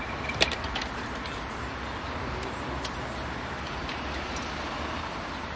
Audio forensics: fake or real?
fake